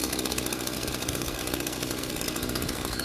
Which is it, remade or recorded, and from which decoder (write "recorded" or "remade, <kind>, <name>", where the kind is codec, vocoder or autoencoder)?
remade, codec, SNAC